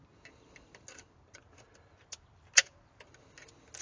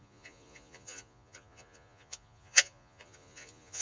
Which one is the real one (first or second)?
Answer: first